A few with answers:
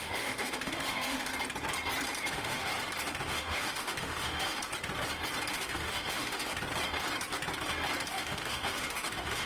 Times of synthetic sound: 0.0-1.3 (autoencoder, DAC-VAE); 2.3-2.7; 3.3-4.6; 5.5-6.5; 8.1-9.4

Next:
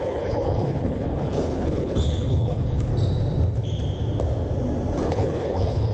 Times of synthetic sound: 0.0-2.9 (codec, HILCodec); 5.1-5.9

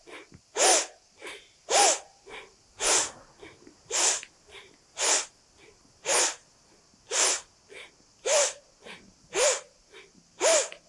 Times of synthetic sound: 1.2-3.2 (vocoder, BigVGAN v2); 3.6-5.0

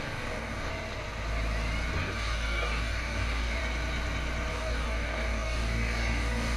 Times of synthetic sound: 0.0-0.7 (codec, DAC); 2.0-3.6; 4.5-6.6

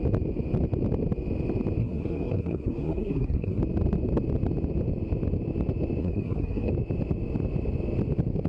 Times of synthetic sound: 1.8-3.6 (codec, SNAC); 6.0-6.7

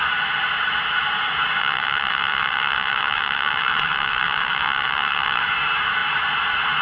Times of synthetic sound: 1.6-5.4 (vocoder, WaveNeXt)